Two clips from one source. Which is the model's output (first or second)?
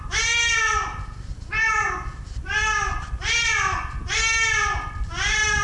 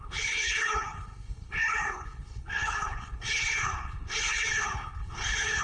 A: second